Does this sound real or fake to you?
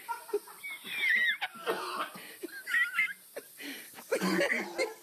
real